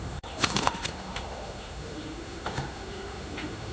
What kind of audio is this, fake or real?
fake